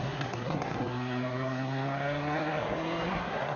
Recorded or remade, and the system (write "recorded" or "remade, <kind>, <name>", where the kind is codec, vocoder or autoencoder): remade, codec, SNAC